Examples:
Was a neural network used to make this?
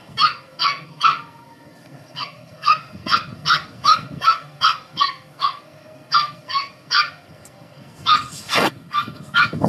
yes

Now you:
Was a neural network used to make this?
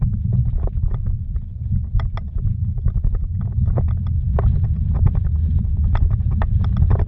no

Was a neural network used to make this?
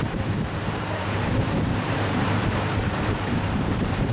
yes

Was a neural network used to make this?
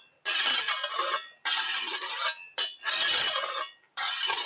no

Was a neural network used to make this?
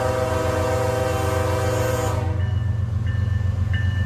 no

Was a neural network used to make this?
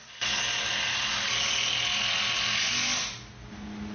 no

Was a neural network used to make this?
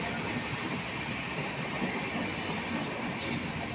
no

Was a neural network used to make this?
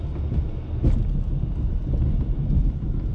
no